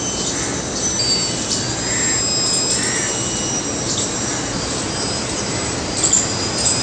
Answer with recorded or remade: recorded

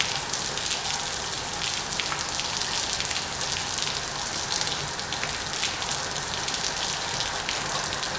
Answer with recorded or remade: recorded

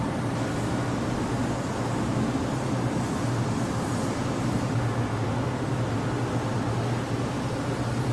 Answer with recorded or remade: recorded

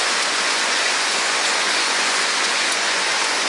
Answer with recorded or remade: remade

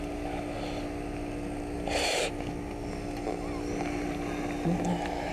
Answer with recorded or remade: recorded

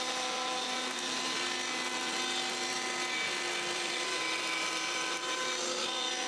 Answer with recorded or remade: recorded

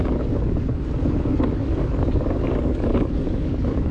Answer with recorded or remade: remade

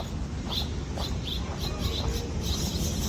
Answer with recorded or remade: recorded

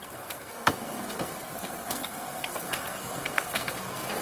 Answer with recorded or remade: remade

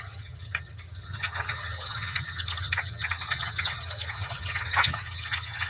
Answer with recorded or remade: remade